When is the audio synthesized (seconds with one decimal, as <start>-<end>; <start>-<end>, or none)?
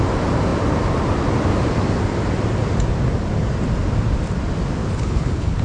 4.8-5.6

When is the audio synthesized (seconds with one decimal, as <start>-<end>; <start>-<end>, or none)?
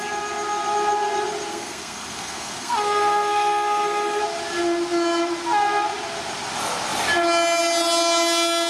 1.5-4.2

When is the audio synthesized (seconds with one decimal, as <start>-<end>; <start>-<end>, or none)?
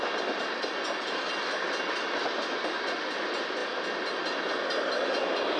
none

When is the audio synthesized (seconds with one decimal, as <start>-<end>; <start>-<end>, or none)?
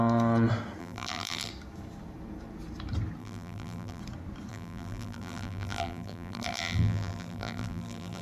0.8-1.5; 3.2-4.0; 4.5-8.2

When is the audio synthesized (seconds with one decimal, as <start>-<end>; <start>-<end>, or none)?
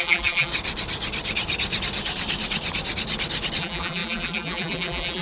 0.0-0.5; 3.6-5.2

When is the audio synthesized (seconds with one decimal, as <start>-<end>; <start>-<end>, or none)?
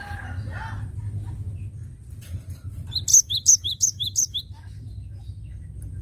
3.1-4.4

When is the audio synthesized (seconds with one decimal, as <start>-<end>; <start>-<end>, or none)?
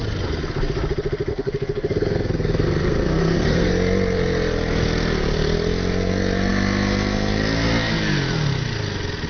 1.3-3.7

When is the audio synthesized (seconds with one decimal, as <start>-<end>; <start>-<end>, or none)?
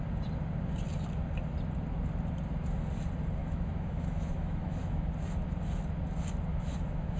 3.4-5.1; 6.5-7.2